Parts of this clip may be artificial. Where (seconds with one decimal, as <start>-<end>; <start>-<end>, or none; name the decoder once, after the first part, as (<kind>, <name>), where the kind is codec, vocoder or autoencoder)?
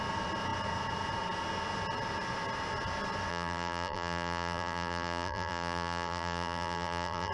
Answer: 3.3-7.3 (vocoder, BigVGAN v2)